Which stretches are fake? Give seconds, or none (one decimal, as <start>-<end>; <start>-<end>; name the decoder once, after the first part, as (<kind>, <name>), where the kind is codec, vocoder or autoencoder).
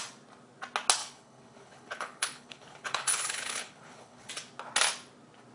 1.0-4.3 (codec, HILCodec)